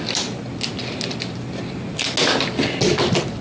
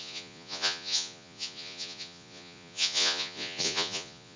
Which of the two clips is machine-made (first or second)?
second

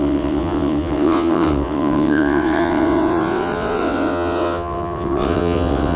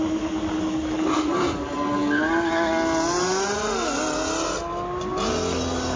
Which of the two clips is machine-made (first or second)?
first